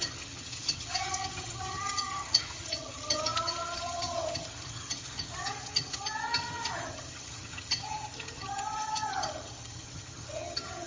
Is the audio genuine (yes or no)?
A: no